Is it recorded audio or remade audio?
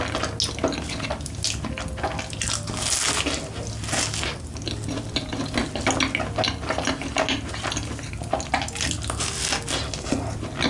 recorded